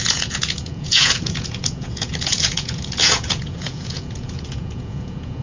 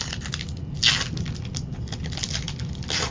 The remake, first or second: first